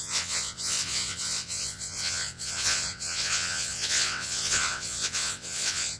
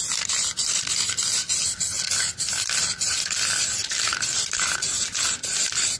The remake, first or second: first